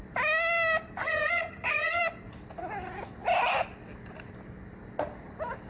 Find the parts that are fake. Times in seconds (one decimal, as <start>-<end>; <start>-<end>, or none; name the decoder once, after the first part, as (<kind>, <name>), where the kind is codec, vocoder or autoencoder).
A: 1.0-2.0 (vocoder, HiFi-GAN)